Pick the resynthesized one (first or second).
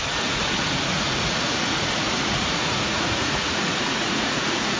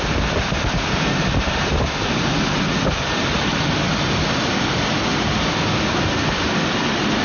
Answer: first